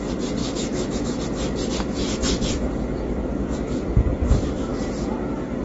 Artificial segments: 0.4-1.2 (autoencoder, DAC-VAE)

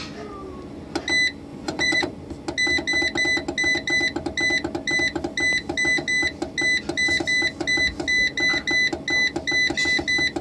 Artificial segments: 1.5-2.1 (vocoder, Vocos)

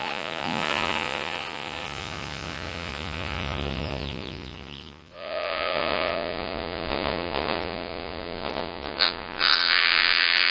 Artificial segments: 0.0-10.5 (vocoder, Vocos)